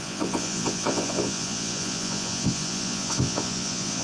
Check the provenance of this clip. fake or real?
fake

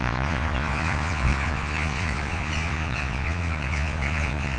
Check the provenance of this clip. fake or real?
fake